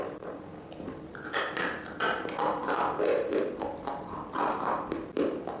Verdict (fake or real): fake